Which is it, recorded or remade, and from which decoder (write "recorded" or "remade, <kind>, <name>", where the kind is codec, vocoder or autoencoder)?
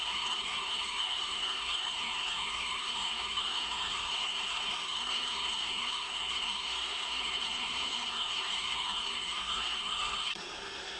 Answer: remade, codec, SNAC